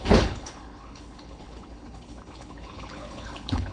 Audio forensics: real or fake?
fake